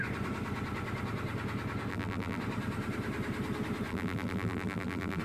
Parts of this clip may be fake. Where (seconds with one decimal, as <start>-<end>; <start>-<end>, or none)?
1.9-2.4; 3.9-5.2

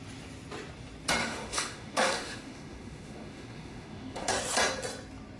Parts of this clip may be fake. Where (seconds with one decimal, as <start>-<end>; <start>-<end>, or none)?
1.2-4.3

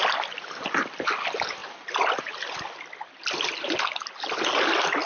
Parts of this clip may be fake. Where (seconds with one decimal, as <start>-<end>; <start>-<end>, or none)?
none

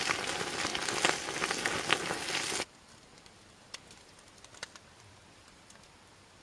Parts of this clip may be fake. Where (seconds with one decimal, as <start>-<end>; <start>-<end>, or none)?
0.0-0.7; 3.4-6.4

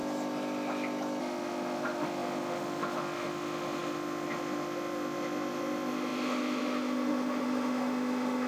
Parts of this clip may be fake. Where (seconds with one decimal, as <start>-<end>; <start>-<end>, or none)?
1.2-8.5

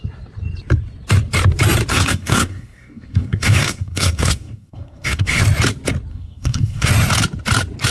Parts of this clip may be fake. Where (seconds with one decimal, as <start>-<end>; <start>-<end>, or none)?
1.9-5.4; 6.1-6.9

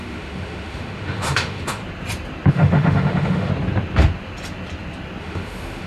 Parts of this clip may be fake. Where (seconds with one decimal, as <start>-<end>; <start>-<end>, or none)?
0.0-1.8; 2.5-3.5; 5.2-5.9

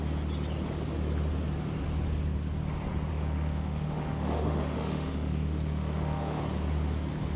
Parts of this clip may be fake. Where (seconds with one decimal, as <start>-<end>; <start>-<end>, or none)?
3.1-6.4